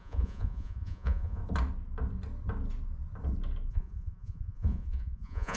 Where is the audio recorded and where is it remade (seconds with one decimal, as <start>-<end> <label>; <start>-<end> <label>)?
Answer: 0.0-1.4 remade; 1.4-3.7 recorded; 3.7-5.6 remade